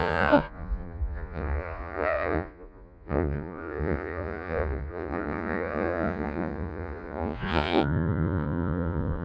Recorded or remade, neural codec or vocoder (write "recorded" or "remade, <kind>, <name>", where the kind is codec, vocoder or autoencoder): remade, vocoder, Vocos